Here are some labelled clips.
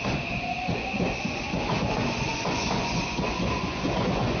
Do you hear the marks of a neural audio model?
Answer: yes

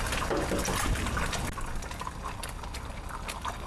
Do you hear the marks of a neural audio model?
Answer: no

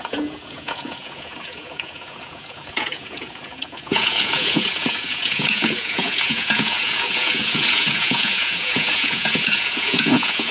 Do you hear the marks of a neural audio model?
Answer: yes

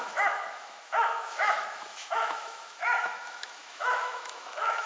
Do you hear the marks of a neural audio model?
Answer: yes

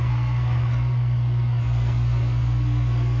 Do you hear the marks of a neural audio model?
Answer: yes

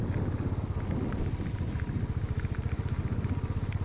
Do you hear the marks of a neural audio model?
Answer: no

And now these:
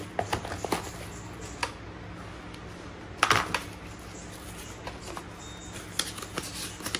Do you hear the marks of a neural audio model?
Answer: no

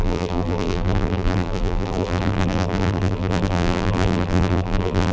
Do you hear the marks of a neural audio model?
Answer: yes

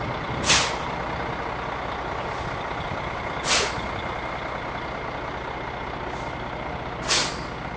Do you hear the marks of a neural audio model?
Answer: no